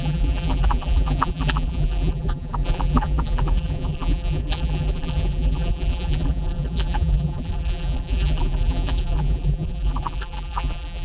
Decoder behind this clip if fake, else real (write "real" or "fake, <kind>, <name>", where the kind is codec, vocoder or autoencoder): fake, vocoder, BigVGAN v2